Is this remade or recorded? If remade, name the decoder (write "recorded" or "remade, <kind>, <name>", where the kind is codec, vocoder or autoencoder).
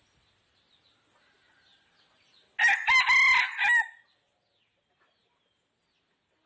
recorded